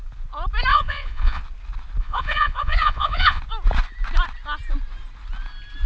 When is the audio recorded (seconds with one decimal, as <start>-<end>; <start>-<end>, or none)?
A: 0.0-0.7; 1.4-2.0; 3.4-5.9